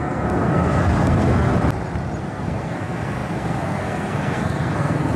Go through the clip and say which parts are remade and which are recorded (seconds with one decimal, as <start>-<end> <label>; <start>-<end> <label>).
0.0-1.5 remade; 1.5-2.2 recorded; 2.2-5.2 remade